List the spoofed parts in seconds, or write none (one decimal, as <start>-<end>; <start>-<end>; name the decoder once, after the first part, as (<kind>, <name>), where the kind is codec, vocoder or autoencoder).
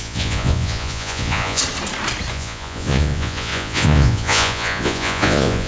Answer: 0.0-1.6 (vocoder, Vocos); 2.3-5.7